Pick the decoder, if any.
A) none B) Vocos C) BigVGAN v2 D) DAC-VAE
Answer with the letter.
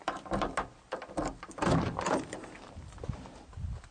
A